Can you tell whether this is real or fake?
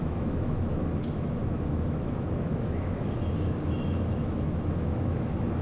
fake